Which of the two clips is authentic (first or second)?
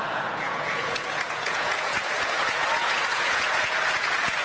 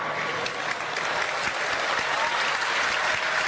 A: second